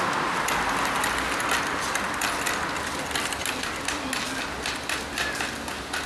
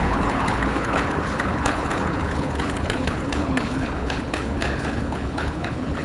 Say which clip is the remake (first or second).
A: second